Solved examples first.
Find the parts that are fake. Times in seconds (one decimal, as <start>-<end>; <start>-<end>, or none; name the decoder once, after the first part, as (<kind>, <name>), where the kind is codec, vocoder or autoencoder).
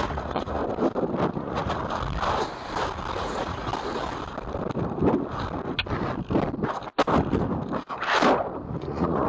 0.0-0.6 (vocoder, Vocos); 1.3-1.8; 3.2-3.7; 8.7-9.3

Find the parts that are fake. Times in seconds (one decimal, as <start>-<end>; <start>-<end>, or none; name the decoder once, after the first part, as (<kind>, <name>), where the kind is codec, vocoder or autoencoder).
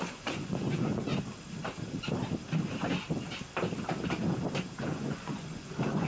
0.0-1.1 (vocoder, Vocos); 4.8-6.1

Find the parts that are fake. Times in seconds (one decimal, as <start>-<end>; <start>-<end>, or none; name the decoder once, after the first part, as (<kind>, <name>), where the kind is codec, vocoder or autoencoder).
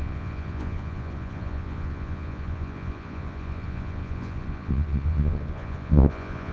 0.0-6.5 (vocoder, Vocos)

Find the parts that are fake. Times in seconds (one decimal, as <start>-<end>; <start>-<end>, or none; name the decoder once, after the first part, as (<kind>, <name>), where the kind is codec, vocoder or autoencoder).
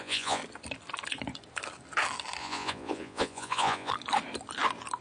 0.0-0.4 (vocoder, Vocos); 2.4-3.9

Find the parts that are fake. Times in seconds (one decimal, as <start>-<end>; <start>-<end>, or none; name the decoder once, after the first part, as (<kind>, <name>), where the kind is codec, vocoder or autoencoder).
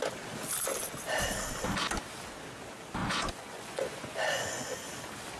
3.0-4.7 (vocoder, Vocos)